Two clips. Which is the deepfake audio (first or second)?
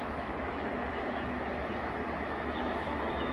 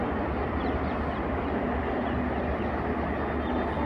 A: first